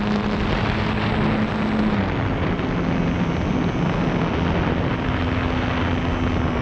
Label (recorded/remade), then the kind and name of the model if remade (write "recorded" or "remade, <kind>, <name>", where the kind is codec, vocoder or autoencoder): recorded